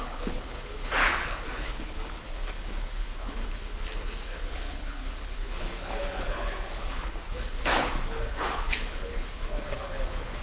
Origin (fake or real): fake